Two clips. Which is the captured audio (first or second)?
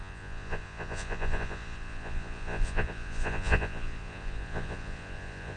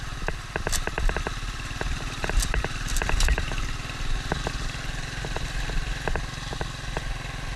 second